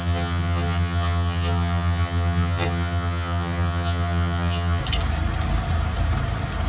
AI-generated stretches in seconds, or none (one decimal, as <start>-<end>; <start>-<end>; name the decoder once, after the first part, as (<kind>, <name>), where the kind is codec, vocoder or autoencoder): 0.0-4.8 (vocoder, HiFi-GAN)